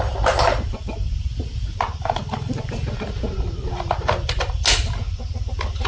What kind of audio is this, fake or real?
real